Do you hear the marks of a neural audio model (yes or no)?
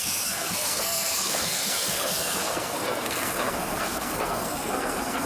yes